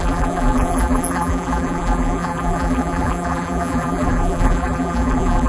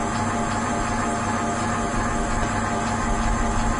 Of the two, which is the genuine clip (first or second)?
second